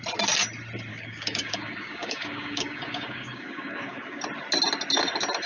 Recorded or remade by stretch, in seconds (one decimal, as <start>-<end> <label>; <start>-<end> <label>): 0.0-0.9 recorded; 0.9-4.2 remade; 4.2-5.5 recorded